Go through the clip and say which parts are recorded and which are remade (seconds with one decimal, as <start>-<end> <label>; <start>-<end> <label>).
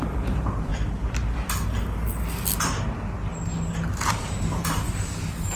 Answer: 0.0-0.7 remade; 0.7-4.1 recorded; 4.1-5.6 remade